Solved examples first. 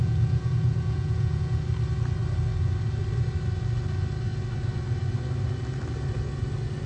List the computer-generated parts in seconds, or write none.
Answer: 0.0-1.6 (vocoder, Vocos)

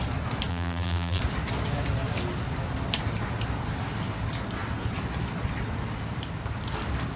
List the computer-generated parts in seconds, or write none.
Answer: 0.5-1.2 (vocoder, BigVGAN v2)

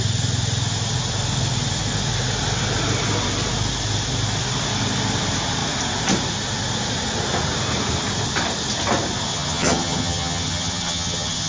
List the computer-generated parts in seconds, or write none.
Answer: 9.3-11.5 (vocoder, HiFi-GAN)

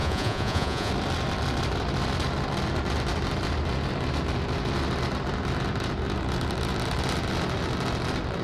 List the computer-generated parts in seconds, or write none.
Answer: 0.0-0.9 (vocoder, Vocos)